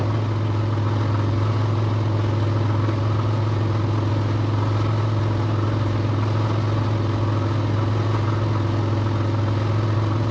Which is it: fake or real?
real